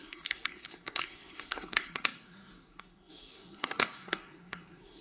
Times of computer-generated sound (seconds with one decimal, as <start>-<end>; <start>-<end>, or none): 0.0-5.0